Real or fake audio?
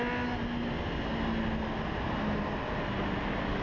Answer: real